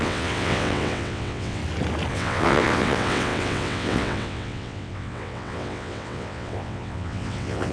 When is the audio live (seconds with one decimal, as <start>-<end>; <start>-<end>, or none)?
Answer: 1.6-2.1